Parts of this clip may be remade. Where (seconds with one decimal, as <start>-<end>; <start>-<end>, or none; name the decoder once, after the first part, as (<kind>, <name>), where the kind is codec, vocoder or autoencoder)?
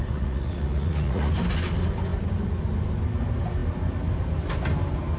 0.0-1.3 (vocoder, Vocos)